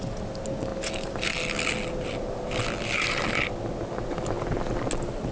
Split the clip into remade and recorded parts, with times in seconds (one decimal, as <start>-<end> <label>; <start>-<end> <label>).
0.0-5.3 recorded